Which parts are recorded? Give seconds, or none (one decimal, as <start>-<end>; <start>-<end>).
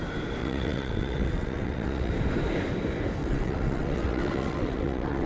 0.0-0.4; 2.1-3.2